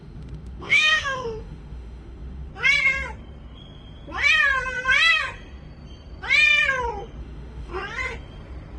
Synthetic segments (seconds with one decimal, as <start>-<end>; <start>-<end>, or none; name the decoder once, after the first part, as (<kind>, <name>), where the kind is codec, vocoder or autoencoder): 0.0-2.5 (autoencoder, DAC-VAE); 7.2-7.7